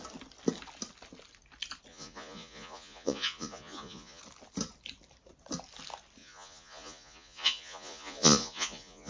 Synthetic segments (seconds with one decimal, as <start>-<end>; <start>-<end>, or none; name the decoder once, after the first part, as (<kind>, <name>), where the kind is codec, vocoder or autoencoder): 1.9-4.2 (vocoder, Vocos); 6.2-9.1

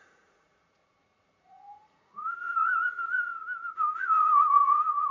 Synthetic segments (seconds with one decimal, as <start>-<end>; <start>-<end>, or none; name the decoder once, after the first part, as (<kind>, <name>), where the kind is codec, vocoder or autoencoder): 0.0-3.4 (vocoder, Vocos); 4.0-5.1

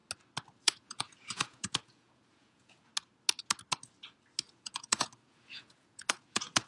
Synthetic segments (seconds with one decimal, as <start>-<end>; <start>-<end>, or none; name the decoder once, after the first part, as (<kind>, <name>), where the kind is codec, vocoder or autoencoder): 0.6-2.9 (vocoder, Vocos); 4.5-6.7

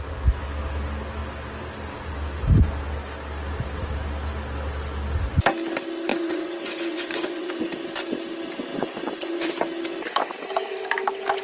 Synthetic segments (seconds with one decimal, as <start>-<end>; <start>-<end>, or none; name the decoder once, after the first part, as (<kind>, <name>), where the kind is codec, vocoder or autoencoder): 6.1-7.7 (vocoder, Vocos); 8.7-9.5

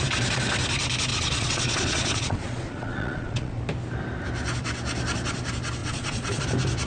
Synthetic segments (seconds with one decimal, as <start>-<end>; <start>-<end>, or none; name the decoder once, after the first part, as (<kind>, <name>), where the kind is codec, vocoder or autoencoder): 1.1-3.6 (vocoder, Vocos); 5.8-6.4

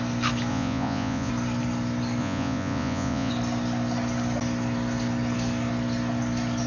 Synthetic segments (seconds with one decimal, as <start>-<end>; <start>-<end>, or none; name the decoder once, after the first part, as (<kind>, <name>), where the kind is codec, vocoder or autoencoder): 0.5-1.3 (vocoder, Vocos); 2.2-3.3

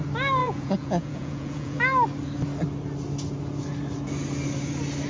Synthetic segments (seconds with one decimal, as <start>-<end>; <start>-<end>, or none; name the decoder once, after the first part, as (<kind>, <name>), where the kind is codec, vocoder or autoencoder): 0.4-1.8 (vocoder, Vocos)